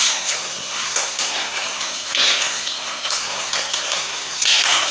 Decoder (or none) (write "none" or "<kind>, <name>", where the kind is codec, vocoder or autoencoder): codec, SNAC